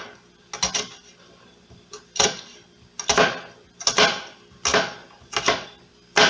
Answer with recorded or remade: recorded